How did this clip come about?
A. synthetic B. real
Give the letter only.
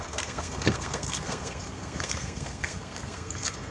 A